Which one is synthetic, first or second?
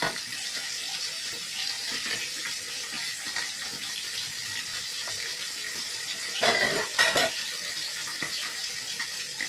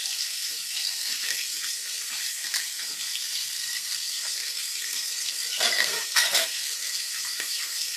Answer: second